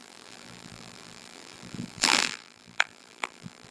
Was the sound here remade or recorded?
remade